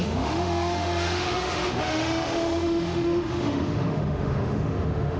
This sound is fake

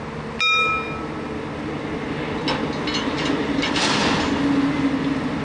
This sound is real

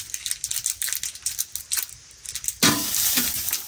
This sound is real